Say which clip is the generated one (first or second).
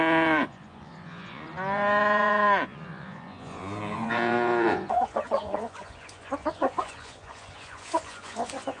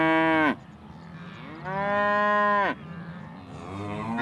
first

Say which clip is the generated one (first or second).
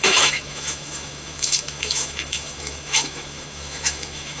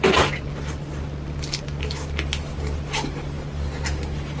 first